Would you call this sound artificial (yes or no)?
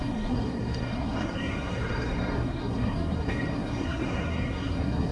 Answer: yes